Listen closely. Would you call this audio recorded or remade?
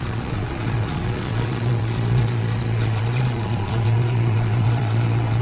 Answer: remade